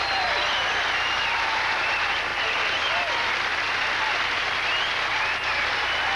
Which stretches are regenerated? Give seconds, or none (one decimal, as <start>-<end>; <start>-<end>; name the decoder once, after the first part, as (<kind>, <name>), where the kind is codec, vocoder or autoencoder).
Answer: 2.3-2.9 (vocoder, BigVGAN v2)